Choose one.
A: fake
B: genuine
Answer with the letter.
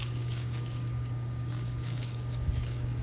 A